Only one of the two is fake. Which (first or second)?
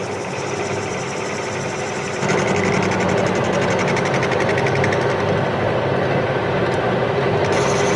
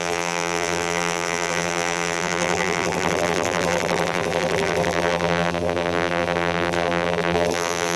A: second